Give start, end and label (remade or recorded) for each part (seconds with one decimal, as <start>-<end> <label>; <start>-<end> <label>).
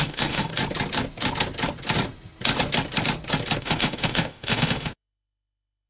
0.0-0.5 remade; 0.5-3.6 recorded; 3.6-5.9 remade